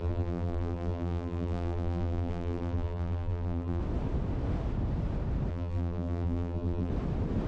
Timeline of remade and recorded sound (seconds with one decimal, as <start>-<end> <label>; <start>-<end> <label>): 0.0-3.8 remade; 3.8-5.5 recorded; 5.5-6.9 remade; 6.9-7.5 recorded